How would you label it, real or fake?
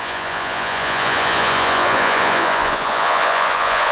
fake